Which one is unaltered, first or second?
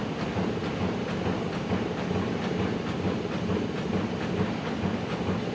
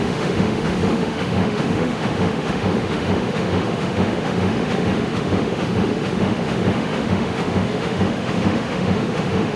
first